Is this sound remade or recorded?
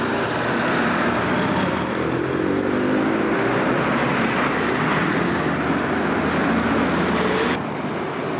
recorded